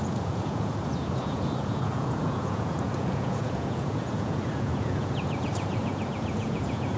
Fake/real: fake